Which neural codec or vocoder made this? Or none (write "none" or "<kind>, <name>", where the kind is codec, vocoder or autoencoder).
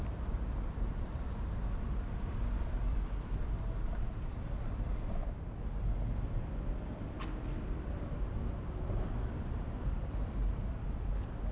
vocoder, BigVGAN v2